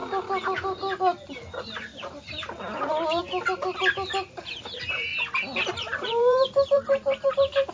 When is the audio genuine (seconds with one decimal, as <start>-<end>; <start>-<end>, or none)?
0.0-5.1; 7.3-7.7